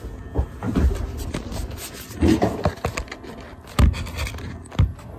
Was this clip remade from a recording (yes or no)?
no